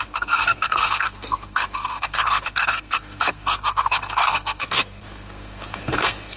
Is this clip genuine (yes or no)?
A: no